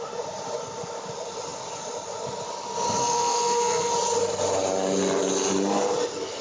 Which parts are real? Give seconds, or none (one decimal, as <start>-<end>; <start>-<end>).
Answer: 0.0-3.0; 3.9-6.4